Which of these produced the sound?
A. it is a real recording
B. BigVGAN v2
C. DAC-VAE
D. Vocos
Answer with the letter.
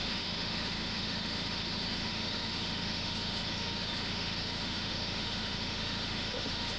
C